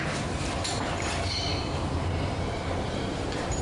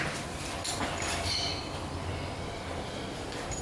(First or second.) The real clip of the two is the second